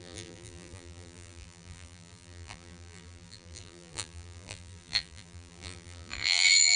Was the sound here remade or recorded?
remade